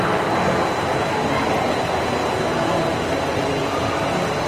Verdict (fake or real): real